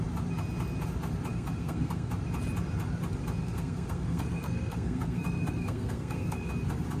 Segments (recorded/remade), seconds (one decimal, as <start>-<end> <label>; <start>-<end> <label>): 0.0-1.3 recorded; 1.3-2.1 remade; 2.1-3.4 recorded; 3.4-6.5 remade; 6.5-7.0 recorded